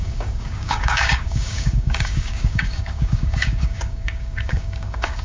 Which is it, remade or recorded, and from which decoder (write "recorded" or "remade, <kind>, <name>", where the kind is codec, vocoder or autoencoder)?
remade, codec, DAC